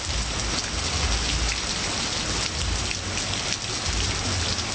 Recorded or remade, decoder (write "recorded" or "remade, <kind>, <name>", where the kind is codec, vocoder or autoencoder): recorded